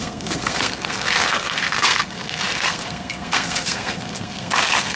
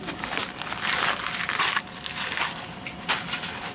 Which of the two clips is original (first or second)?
second